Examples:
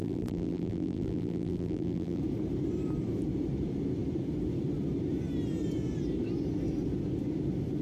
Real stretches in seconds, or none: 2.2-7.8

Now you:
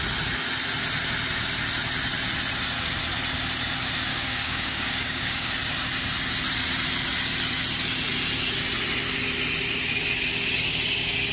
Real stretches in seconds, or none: 0.0-4.1; 5.5-11.3

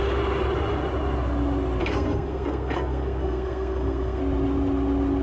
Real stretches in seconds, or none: 0.0-1.8; 4.2-5.2